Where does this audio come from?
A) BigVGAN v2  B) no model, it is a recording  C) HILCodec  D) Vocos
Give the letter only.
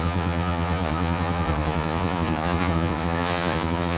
D